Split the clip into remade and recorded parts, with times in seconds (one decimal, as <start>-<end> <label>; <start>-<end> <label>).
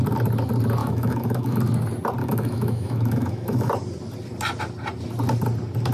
0.0-0.8 recorded; 0.8-1.6 remade; 1.6-2.2 recorded; 2.2-3.7 remade; 3.7-5.9 recorded